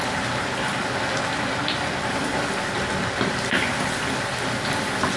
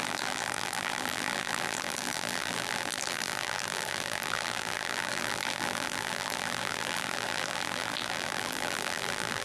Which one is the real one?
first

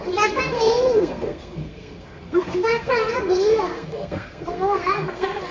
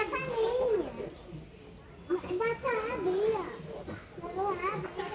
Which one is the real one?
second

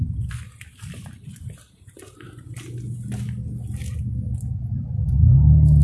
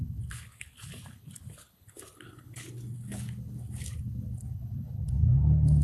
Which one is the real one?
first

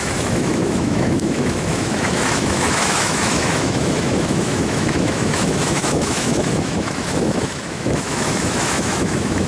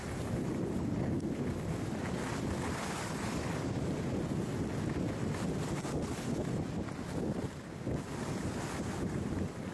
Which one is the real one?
second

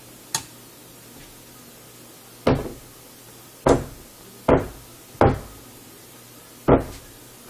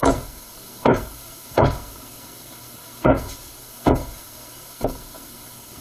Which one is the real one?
first